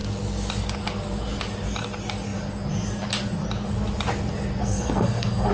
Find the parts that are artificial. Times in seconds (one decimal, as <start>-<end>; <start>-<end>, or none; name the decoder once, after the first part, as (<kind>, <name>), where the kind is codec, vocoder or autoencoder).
4.6-5.5 (codec, SNAC)

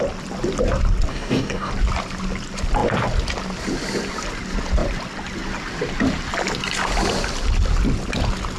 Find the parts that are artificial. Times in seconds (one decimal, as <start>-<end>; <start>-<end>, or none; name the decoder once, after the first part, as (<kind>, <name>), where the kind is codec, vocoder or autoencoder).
1.1-1.7 (codec, DAC)

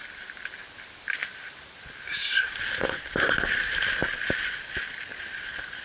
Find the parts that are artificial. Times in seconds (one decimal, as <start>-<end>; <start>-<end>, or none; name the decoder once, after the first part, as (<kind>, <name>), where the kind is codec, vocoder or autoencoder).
none

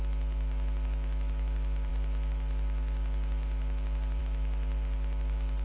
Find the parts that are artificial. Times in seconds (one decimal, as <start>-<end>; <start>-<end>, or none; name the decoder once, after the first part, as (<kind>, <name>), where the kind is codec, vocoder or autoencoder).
none

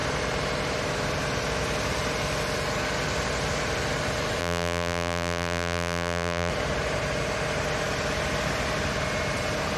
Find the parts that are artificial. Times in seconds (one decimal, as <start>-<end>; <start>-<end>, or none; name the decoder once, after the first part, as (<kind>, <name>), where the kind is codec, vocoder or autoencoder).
4.4-6.5 (vocoder, BigVGAN v2)

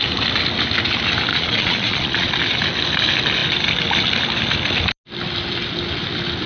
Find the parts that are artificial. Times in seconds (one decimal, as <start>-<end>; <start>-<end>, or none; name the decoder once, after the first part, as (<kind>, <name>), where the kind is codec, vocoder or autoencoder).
1.3-2.3 (vocoder, Vocos)